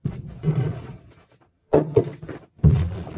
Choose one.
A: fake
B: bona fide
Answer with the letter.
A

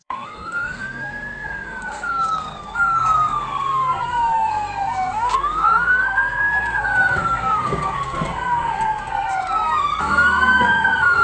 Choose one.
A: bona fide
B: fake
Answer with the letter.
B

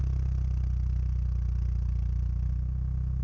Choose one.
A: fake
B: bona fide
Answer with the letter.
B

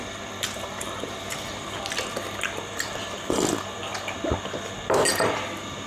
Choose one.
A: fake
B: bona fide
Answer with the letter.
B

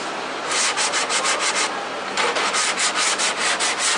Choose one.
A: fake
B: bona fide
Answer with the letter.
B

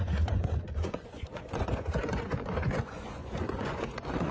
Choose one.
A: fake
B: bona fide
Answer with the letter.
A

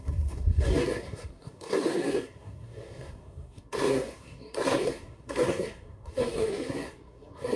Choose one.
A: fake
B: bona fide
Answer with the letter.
A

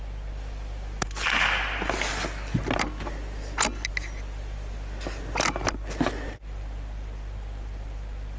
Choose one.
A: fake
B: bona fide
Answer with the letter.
B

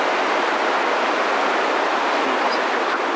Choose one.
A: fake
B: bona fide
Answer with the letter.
B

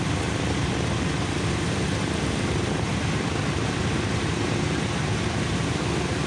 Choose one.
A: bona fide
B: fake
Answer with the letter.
A